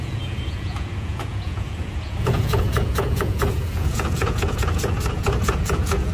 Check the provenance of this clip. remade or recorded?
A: remade